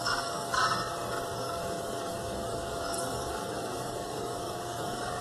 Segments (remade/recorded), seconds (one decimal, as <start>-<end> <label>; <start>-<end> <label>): 0.0-0.6 remade; 0.6-1.4 recorded; 1.4-5.2 remade